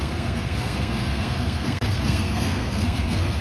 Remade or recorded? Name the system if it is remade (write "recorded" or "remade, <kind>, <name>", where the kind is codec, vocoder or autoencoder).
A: remade, codec, SNAC